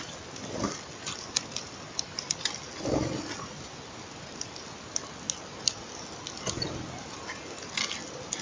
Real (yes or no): yes